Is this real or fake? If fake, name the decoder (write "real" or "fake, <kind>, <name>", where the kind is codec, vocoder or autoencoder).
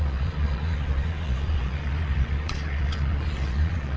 fake, vocoder, Vocos